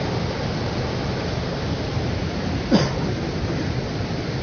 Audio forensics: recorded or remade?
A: recorded